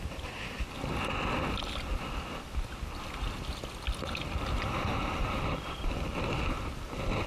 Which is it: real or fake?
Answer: real